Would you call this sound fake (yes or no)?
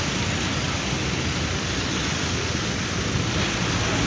no